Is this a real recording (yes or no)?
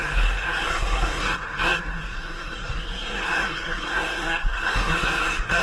no